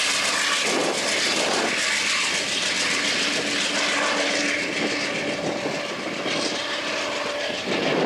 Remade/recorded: recorded